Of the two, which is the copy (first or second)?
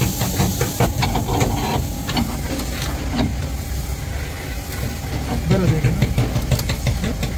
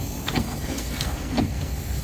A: second